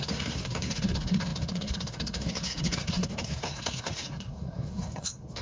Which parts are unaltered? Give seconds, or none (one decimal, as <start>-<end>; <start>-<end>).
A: none